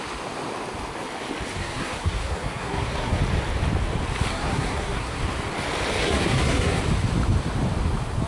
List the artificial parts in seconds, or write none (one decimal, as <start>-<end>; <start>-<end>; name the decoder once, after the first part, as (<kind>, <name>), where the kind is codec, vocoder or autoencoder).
1.6-3.2 (codec, SNAC); 4.3-5.2; 6.0-6.8